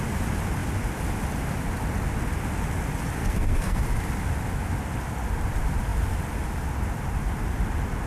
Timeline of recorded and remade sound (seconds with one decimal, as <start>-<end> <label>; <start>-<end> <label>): 0.0-3.2 recorded; 3.2-3.8 remade; 3.8-8.1 recorded

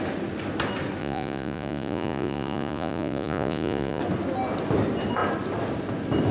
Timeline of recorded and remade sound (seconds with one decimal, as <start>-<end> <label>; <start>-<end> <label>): 0.0-1.0 recorded; 1.0-4.0 remade; 4.0-6.3 recorded

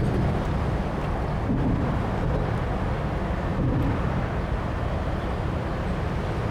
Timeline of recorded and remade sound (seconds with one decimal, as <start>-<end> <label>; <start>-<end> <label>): 0.0-6.5 recorded

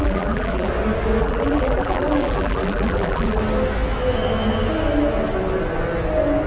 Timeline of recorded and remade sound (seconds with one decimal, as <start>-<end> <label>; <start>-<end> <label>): 0.0-0.7 remade; 0.7-1.2 recorded; 1.2-3.4 remade; 3.4-6.5 recorded

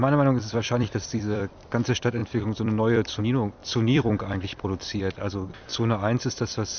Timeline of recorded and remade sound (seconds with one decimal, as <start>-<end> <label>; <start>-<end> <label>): 0.0-0.4 recorded; 0.4-1.5 remade; 1.5-2.2 recorded; 2.2-3.2 remade; 3.2-3.6 recorded; 3.6-5.0 remade; 5.0-6.8 recorded

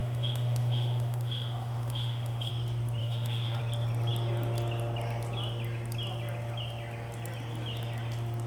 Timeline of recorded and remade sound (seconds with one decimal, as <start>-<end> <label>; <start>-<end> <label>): 0.0-2.5 remade; 2.5-3.0 recorded; 3.0-3.6 remade; 3.6-8.5 recorded

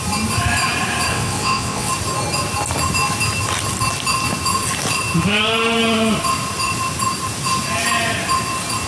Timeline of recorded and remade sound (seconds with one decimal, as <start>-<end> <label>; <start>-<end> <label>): 0.0-1.1 recorded; 1.1-1.9 remade; 1.9-8.9 recorded

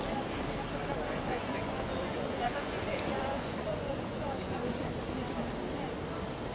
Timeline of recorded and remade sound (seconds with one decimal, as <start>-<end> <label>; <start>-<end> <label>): 0.0-1.3 recorded; 1.3-4.9 remade; 4.9-6.5 recorded